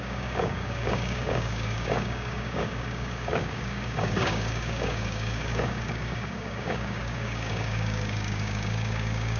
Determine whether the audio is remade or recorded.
remade